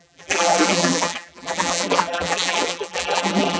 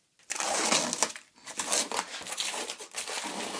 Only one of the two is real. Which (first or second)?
second